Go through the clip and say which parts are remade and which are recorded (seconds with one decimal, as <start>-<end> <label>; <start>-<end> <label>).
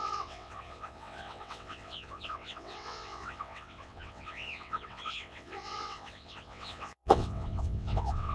0.0-8.3 remade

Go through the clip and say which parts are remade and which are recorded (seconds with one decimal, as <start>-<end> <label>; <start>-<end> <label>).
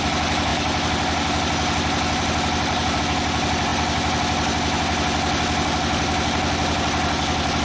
0.0-7.6 recorded